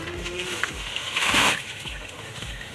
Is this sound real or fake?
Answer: fake